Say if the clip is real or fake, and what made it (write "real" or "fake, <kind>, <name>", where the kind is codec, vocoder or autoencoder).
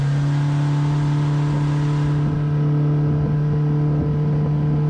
real